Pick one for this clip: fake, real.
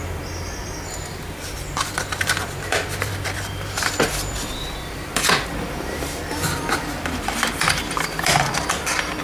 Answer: fake